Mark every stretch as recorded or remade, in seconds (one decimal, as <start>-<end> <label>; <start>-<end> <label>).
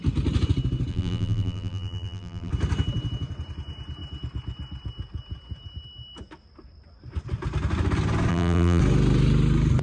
0.0-0.9 recorded; 0.9-2.5 remade; 2.5-8.3 recorded; 8.3-8.8 remade; 8.8-9.8 recorded